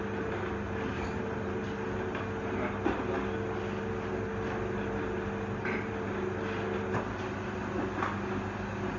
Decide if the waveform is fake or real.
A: real